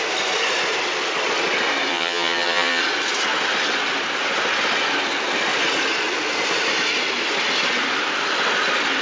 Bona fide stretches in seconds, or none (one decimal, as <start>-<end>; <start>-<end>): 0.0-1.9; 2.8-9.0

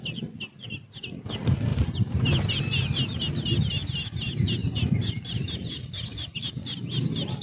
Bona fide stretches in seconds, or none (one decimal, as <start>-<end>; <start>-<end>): 0.0-1.7; 2.6-4.6; 5.7-7.4

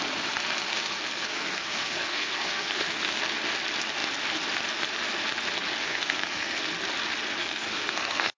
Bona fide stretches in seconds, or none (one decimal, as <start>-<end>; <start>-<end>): 0.0-0.7; 3.2-5.8; 6.6-7.4